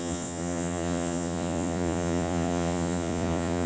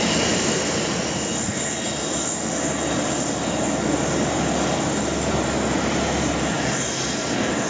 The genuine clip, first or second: second